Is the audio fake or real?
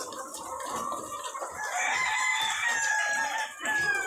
real